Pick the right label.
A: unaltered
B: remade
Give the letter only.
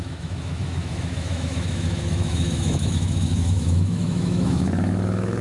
B